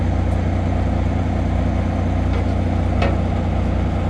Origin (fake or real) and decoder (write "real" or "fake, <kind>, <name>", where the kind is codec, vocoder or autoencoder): real